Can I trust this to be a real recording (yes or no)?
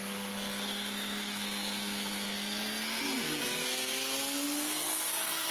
no